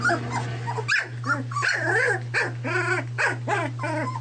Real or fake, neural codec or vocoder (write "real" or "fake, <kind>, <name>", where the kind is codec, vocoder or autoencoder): real